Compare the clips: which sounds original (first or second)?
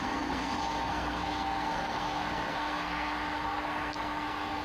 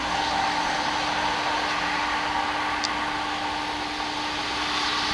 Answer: second